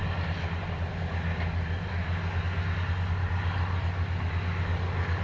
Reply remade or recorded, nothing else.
recorded